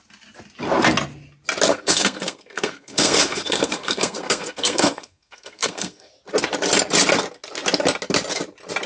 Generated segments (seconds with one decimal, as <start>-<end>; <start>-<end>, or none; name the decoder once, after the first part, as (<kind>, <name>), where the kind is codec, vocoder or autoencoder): 1.7-6.1 (codec, SNAC)